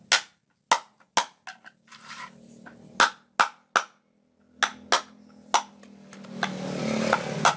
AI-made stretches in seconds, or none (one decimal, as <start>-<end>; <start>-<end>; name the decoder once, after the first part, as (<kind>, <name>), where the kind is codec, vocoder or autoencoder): none